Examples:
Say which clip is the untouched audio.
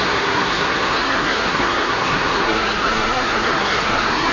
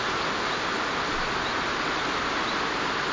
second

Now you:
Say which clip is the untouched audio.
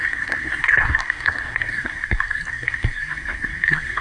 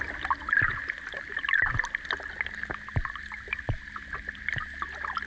second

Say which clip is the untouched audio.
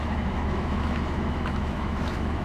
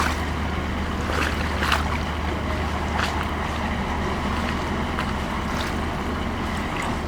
second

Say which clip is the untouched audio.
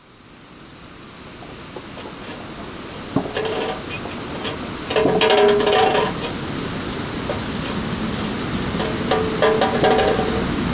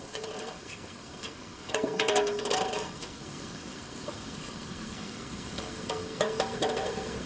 first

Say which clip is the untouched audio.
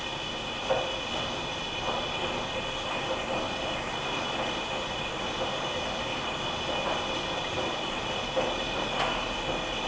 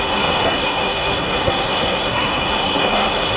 first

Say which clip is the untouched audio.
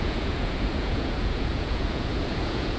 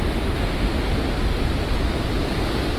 second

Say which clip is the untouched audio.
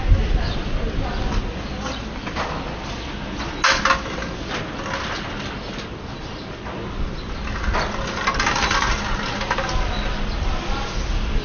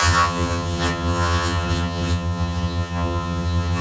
first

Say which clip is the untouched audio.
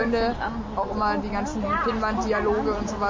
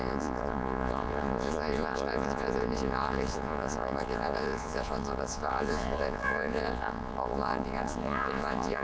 first